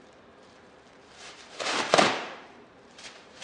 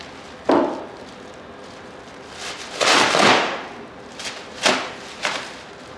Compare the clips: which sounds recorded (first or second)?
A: second